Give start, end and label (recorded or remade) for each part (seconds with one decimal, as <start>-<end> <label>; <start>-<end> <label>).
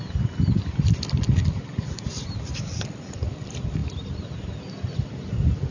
0.0-5.7 recorded